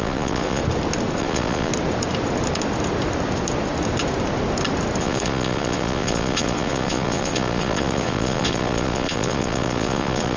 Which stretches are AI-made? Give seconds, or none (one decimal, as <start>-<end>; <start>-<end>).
0.0-0.6; 1.2-1.7; 5.0-10.4

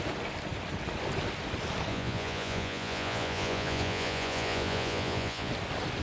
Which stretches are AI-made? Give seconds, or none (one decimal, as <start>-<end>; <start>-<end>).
1.9-5.5

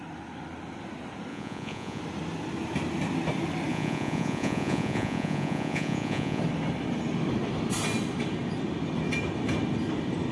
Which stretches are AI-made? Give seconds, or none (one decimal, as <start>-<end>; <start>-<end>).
1.3-2.0; 3.7-6.4

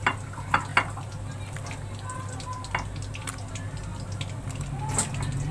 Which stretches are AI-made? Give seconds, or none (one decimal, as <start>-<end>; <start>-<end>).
none